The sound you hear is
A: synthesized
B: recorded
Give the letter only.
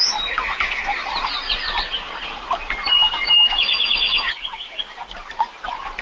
B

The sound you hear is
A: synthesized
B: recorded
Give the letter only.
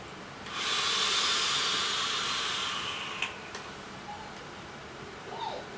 B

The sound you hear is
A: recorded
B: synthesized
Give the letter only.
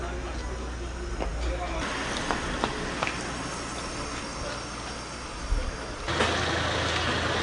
A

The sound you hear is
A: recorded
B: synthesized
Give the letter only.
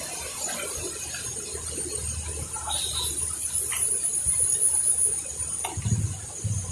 A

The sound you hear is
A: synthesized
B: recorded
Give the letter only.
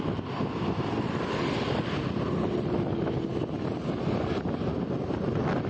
B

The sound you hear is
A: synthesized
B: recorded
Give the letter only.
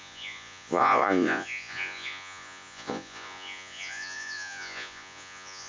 A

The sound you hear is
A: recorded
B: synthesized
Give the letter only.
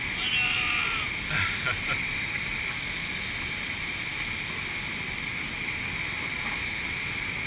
A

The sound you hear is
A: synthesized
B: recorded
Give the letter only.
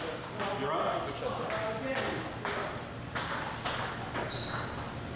B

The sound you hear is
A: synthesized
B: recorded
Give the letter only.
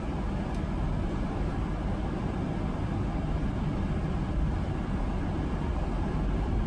B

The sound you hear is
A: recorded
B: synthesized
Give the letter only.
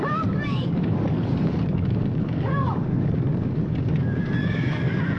B